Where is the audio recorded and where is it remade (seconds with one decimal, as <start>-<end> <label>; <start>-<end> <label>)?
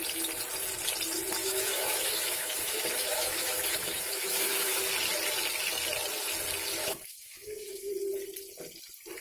0.0-1.4 recorded; 1.4-4.8 remade; 4.8-6.8 recorded; 6.8-7.9 remade; 7.9-9.2 recorded